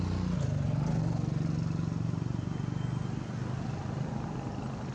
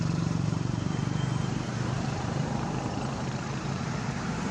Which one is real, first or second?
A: first